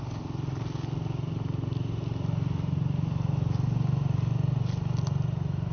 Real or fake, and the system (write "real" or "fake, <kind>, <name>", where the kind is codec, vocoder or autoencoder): real